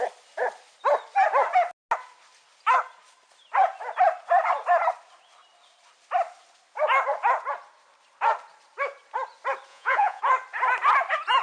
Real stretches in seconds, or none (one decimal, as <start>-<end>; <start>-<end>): 0.0-9.7; 10.2-11.4

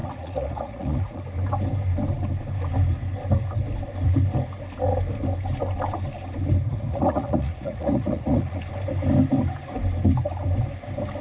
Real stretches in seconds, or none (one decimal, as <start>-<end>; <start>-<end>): 1.2-6.7; 8.6-11.2